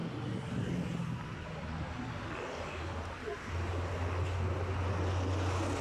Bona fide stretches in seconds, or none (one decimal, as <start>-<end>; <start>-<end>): 0.0-5.8